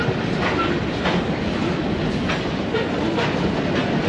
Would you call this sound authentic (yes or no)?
yes